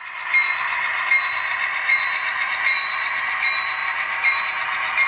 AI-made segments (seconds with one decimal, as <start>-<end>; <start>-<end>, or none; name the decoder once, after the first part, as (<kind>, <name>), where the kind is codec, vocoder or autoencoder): 3.8-4.4 (vocoder, BigVGAN v2)